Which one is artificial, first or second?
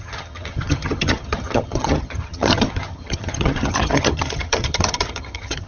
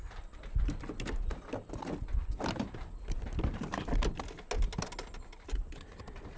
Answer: first